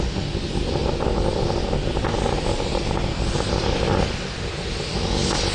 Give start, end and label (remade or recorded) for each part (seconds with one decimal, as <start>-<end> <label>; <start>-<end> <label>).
0.0-5.5 recorded